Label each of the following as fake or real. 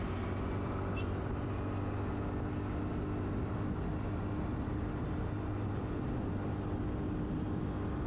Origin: real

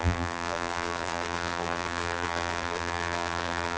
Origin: fake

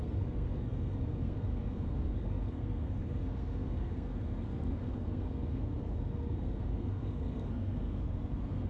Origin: fake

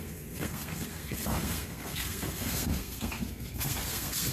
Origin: fake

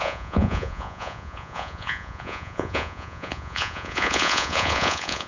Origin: fake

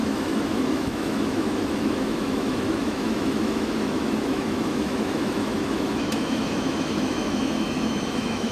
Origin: fake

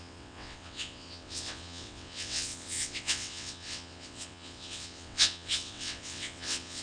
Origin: fake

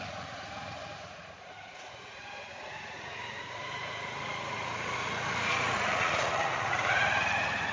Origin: fake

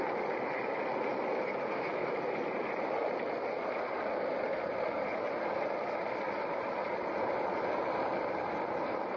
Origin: real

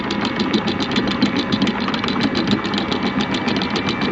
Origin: real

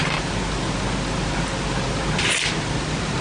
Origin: real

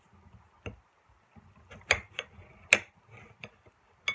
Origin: real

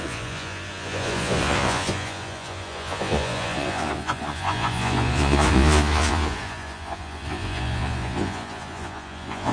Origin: fake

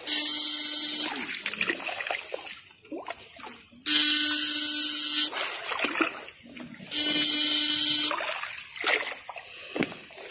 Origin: real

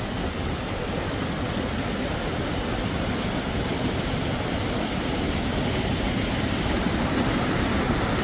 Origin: real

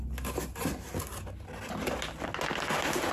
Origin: real